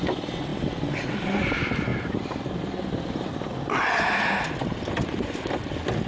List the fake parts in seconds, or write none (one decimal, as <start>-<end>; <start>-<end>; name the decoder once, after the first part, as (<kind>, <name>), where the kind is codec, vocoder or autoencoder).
none